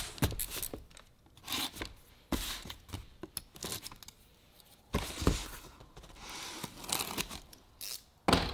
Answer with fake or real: real